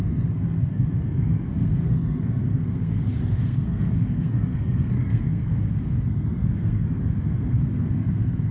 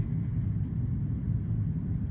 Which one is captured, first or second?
second